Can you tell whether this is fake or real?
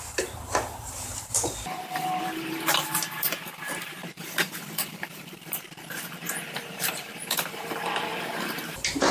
fake